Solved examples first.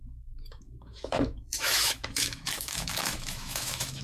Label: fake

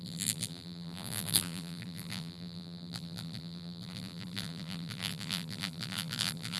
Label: fake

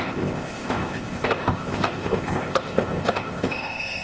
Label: fake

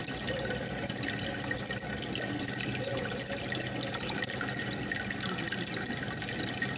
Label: real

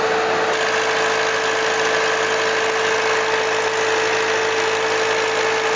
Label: real